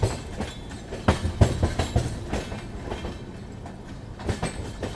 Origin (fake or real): real